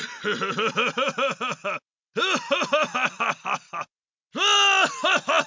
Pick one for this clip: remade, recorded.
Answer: recorded